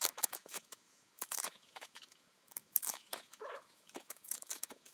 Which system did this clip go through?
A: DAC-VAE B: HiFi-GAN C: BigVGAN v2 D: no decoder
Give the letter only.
A